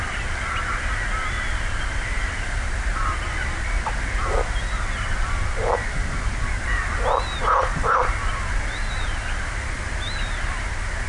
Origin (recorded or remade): recorded